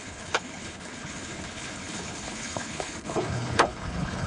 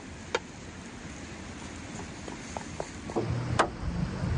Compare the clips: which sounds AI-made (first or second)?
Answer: first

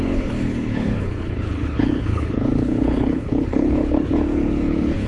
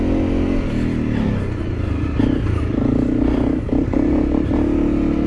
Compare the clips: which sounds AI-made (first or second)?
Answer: first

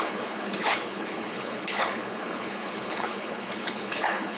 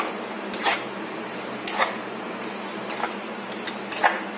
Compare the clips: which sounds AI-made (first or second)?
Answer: first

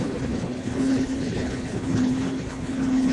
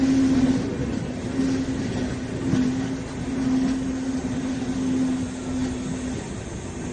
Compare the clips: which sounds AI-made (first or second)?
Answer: first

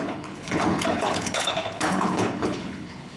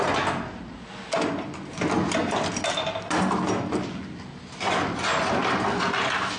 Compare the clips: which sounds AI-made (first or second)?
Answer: first